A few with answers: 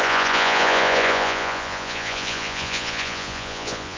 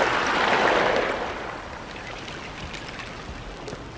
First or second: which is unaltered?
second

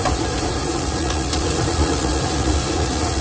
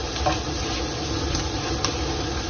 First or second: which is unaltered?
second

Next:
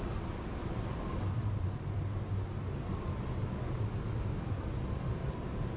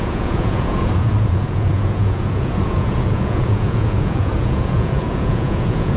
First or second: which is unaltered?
first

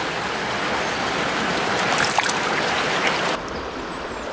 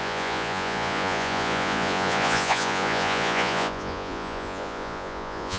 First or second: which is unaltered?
first